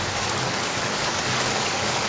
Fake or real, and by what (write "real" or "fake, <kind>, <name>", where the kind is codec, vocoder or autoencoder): fake, codec, DAC